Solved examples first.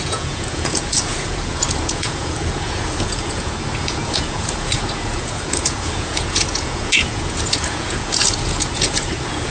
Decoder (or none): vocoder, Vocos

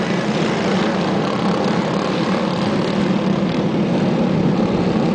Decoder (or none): none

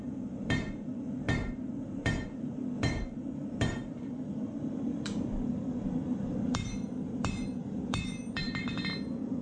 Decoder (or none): vocoder, BigVGAN v2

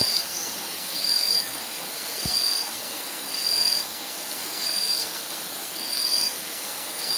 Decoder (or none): codec, SNAC